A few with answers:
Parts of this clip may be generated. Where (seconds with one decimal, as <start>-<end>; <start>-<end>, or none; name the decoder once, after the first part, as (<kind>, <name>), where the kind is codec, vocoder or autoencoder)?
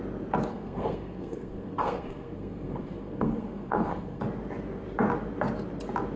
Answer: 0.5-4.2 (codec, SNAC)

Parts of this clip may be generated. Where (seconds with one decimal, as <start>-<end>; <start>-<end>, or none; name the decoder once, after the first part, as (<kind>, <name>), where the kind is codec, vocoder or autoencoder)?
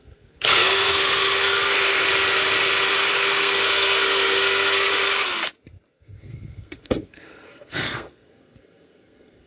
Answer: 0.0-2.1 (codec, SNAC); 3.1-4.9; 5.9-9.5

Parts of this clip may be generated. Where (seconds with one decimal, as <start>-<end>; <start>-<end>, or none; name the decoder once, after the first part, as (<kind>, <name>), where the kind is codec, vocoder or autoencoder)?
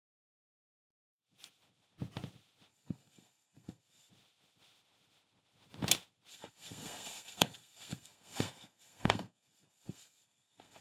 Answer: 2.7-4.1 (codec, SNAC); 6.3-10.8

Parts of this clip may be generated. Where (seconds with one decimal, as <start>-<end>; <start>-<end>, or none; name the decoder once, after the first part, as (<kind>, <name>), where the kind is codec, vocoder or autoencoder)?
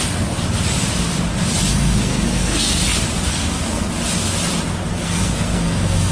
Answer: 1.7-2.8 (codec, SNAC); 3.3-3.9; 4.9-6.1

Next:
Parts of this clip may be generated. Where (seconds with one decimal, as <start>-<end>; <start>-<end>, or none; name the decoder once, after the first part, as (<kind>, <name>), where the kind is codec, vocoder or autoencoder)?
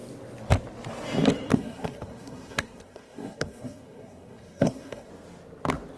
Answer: 1.5-5.1 (codec, SNAC)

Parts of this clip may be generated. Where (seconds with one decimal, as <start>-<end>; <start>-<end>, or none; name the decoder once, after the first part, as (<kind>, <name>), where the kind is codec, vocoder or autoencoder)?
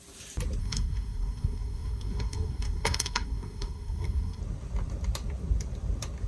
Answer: 0.6-4.4 (codec, SNAC)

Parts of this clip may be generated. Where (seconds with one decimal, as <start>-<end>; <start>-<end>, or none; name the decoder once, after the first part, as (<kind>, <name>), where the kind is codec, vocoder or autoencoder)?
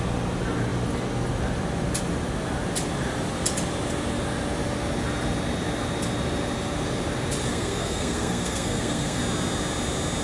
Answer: 7.5-9.2 (codec, SNAC)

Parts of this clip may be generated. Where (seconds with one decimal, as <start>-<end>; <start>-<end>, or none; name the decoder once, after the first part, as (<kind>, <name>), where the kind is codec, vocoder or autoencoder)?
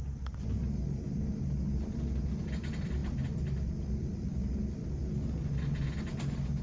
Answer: none